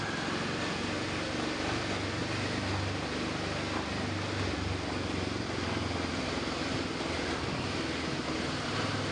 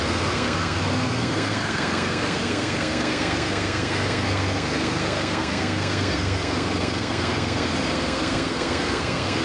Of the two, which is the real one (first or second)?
first